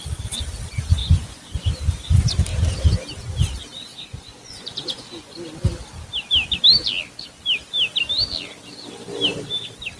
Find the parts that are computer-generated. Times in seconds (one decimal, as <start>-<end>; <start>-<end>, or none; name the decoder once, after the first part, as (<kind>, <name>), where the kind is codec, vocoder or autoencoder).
1.0-1.7 (vocoder, Vocos); 3.9-5.3